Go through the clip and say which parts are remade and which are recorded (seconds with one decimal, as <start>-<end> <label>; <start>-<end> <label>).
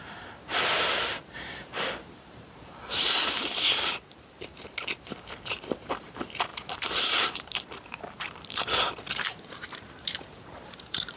0.0-11.2 remade